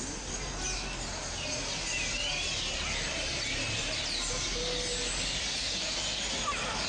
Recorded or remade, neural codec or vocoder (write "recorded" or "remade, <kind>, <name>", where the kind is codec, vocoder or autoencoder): recorded